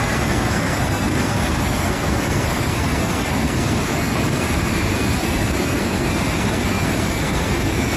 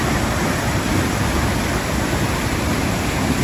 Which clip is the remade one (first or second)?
first